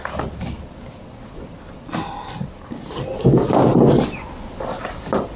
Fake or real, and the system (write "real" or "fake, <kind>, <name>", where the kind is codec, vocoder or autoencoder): real